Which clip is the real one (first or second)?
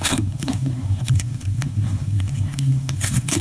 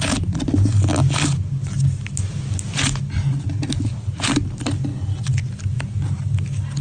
second